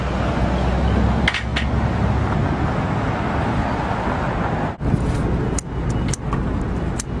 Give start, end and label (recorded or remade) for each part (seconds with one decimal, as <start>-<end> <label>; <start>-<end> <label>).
0.0-7.2 recorded

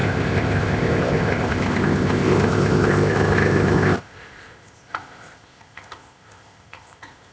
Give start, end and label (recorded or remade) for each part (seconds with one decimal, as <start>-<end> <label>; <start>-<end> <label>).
0.0-7.3 remade